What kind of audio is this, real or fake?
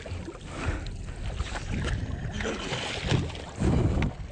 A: real